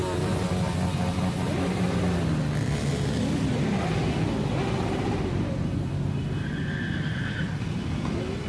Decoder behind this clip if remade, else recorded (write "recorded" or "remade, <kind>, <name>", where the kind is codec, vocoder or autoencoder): recorded